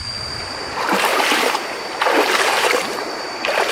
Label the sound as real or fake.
fake